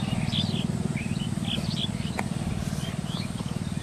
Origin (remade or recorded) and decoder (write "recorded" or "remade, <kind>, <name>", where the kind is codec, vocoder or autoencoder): recorded